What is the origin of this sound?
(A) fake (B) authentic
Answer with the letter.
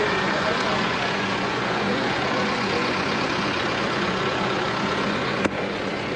A